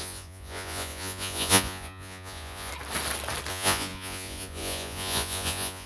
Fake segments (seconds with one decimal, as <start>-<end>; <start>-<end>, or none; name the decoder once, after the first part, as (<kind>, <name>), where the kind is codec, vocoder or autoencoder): 0.0-2.7 (vocoder, Vocos); 3.5-5.9